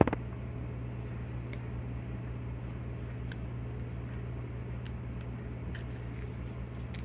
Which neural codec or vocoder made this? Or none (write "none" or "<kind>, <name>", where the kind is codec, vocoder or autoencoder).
none